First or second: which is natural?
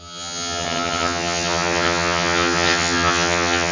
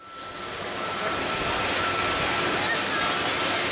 second